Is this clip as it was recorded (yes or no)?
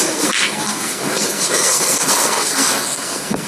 no